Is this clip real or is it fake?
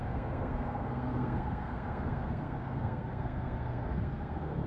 fake